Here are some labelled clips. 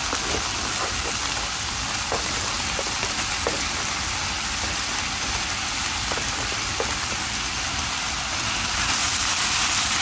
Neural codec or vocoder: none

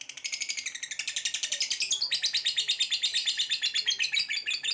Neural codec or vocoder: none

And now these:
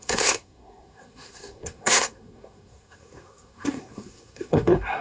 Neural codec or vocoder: codec, SNAC